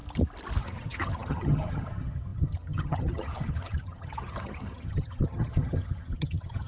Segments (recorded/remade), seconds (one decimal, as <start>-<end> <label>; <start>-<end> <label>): 0.0-0.6 recorded; 0.6-6.7 remade